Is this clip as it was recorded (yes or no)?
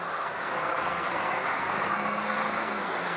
no